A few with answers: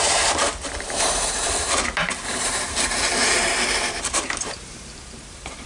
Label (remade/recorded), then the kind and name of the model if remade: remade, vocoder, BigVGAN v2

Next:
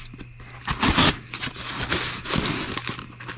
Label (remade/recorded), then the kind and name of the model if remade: recorded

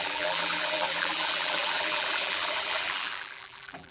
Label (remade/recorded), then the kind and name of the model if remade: remade, vocoder, BigVGAN v2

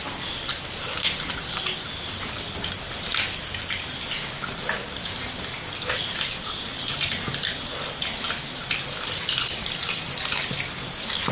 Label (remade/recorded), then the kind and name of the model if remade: remade, vocoder, BigVGAN v2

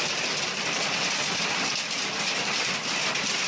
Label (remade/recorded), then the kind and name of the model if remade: recorded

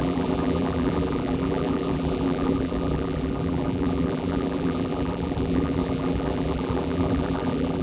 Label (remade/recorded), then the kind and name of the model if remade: remade, vocoder, BigVGAN v2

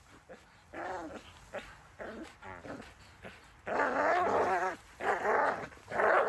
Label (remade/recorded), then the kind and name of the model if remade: recorded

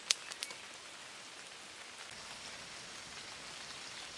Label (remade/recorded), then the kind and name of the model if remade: recorded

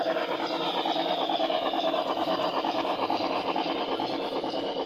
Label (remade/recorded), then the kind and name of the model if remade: recorded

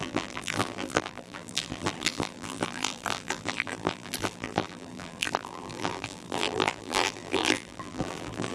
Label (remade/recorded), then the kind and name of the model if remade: remade, vocoder, BigVGAN v2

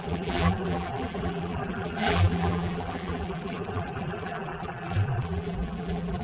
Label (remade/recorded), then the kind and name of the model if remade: remade, vocoder, BigVGAN v2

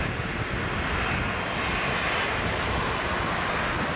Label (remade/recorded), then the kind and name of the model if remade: recorded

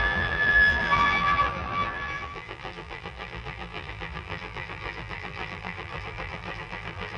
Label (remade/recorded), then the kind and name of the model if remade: remade, vocoder, BigVGAN v2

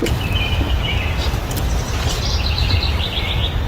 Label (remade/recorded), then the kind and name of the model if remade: recorded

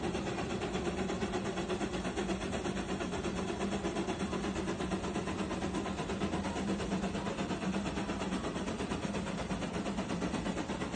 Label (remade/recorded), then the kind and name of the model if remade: recorded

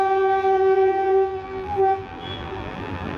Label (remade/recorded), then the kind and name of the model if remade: remade, vocoder, BigVGAN v2